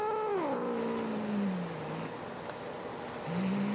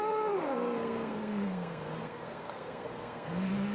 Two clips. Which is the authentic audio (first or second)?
first